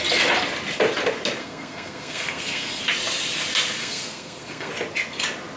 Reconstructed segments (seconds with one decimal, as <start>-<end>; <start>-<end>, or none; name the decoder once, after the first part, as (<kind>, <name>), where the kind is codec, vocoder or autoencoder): 1.4-2.8 (codec, SNAC); 3.8-4.7